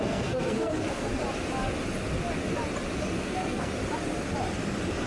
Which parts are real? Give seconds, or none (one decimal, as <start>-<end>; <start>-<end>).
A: 1.2-3.2; 3.7-5.1